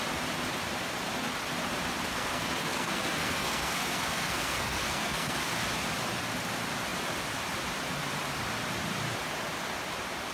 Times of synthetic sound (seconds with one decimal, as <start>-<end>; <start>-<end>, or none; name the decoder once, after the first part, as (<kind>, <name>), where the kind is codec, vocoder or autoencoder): 2.1-5.4 (codec, SNAC)